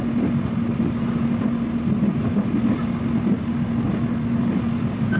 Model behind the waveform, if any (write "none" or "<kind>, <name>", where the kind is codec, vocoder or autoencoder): none